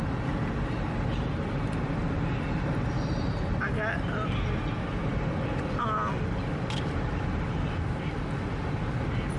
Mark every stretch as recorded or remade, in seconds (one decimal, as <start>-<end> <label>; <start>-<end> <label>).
0.0-9.4 recorded